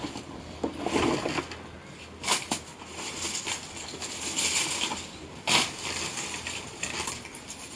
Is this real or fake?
real